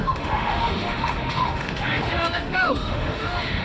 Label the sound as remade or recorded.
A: remade